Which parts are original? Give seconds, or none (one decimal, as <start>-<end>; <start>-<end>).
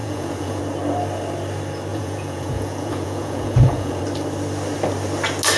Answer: 0.6-1.9; 4.0-5.6